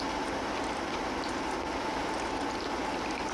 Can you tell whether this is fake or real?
real